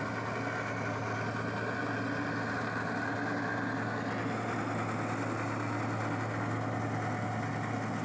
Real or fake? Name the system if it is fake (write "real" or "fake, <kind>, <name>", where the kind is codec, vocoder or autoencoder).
real